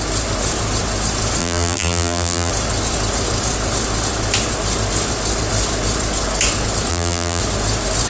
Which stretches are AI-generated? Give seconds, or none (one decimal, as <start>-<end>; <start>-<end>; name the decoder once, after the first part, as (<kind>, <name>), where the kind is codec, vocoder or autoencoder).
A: 1.4-2.5 (vocoder, BigVGAN v2); 6.9-7.4